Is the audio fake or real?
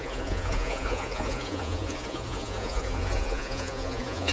fake